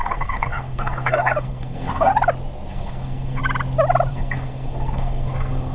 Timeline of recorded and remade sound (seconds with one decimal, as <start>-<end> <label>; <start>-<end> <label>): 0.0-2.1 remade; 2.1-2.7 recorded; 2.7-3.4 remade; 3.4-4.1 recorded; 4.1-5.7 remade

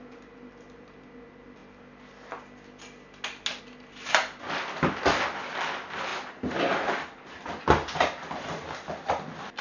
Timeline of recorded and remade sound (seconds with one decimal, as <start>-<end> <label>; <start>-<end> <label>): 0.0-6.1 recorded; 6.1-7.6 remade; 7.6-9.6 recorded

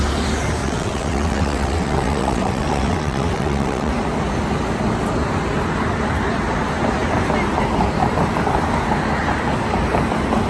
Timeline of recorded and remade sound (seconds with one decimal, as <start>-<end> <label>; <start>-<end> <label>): 0.0-0.6 recorded; 0.6-3.9 remade; 3.9-10.5 recorded

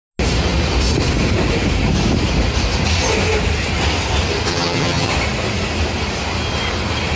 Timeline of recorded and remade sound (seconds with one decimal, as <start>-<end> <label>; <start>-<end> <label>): 0.0-4.5 recorded; 4.5-5.1 remade; 5.1-7.2 recorded